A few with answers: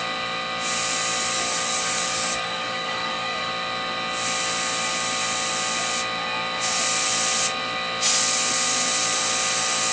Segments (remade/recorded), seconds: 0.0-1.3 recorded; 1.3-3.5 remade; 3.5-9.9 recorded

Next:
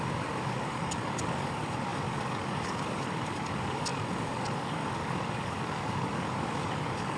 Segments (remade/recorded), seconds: 0.0-7.2 remade

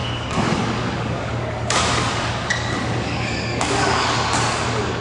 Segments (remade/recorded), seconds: 0.0-5.0 remade

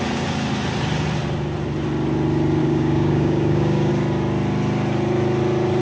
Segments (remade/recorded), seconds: 0.0-2.6 recorded; 2.6-3.9 remade; 3.9-5.8 recorded

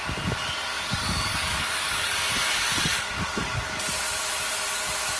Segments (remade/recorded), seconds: 0.0-0.7 recorded; 0.7-3.8 remade; 3.8-5.2 recorded

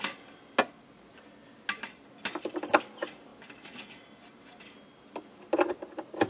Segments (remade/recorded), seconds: 0.0-6.3 recorded

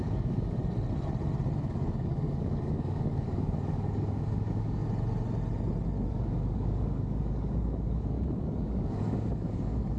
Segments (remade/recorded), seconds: 0.0-0.6 remade; 0.6-1.6 recorded; 1.6-4.8 remade; 4.8-6.1 recorded; 6.1-10.0 remade

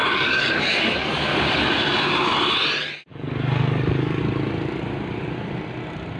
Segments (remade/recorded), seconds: 0.0-1.7 remade; 1.7-3.1 recorded; 3.1-4.2 remade; 4.2-6.2 recorded